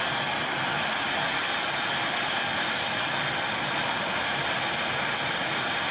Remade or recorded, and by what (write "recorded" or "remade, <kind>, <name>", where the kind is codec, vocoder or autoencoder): recorded